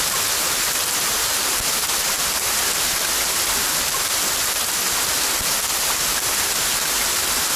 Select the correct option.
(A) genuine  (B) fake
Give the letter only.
A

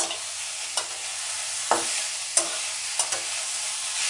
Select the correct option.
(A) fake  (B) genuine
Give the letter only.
B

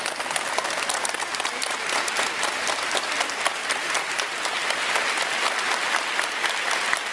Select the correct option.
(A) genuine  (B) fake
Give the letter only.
A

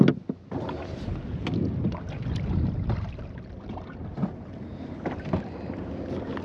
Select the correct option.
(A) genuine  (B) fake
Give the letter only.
A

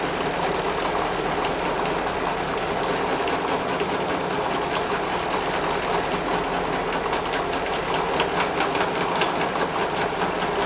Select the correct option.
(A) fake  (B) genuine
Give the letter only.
B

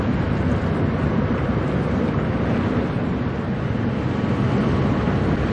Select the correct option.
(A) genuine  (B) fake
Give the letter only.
A